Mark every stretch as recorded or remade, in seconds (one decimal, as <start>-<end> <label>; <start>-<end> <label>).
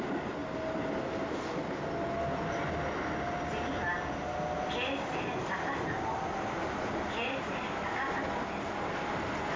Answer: 0.0-9.6 recorded